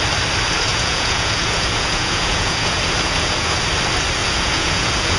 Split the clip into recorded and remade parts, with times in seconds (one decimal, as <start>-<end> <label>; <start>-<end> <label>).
0.0-0.7 recorded; 0.7-3.6 remade; 3.6-4.2 recorded; 4.2-5.2 remade